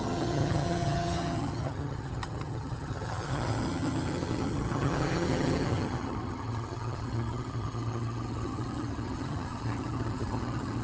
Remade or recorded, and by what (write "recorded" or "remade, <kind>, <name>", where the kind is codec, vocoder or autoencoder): remade, vocoder, HiFi-GAN